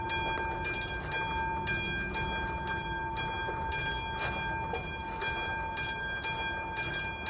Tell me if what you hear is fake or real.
real